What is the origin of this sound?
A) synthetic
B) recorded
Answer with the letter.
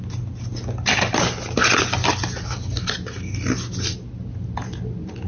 B